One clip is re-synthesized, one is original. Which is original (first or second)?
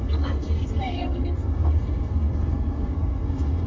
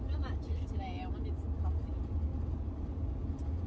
second